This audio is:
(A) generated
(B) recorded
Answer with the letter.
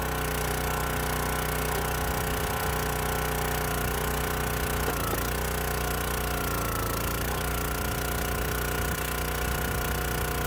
B